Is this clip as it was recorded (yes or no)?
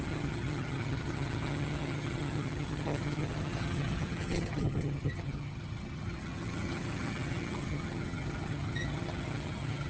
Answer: no